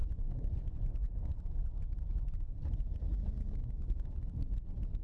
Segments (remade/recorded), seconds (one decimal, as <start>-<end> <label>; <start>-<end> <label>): 0.0-3.0 remade; 3.0-3.6 recorded; 3.6-4.3 remade; 4.3-5.0 recorded